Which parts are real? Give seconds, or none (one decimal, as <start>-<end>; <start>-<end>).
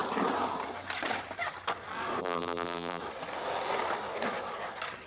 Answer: 0.0-2.2; 3.0-5.1